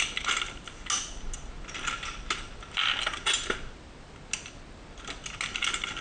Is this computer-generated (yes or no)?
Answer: no